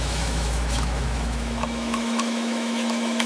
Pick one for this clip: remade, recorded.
remade